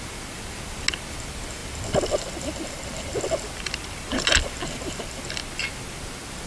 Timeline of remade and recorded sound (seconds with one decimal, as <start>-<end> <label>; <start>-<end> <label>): 0.0-6.5 recorded